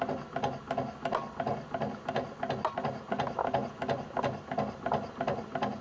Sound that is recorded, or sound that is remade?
recorded